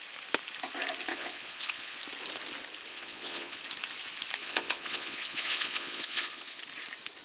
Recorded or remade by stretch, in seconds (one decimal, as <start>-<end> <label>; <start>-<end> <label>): 0.0-1.1 recorded; 1.1-2.0 remade; 2.0-2.9 recorded; 2.9-3.6 remade; 3.6-4.4 recorded; 4.4-6.6 remade; 6.6-7.2 recorded